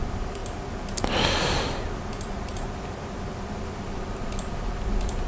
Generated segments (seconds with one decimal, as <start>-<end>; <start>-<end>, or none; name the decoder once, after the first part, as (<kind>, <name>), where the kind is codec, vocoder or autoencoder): 0.0-0.4 (vocoder, BigVGAN v2); 3.5-5.3